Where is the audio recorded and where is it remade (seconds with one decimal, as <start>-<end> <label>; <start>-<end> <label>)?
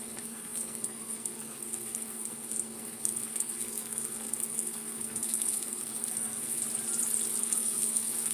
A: 0.0-6.6 remade; 6.6-7.4 recorded; 7.4-8.3 remade